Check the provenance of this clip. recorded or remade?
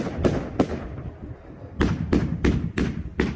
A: recorded